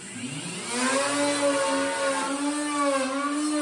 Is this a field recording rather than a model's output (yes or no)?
yes